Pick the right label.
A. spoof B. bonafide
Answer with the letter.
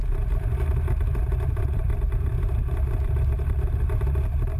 A